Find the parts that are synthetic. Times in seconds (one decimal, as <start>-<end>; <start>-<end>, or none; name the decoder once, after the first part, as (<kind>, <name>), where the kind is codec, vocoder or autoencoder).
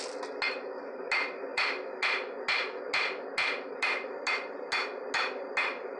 none